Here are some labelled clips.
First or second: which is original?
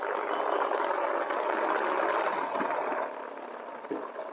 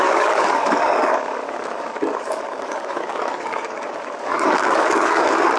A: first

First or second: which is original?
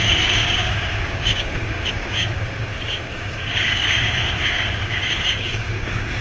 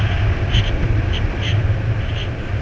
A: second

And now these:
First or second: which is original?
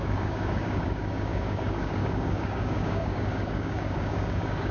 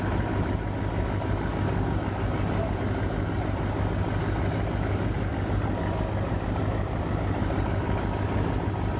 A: second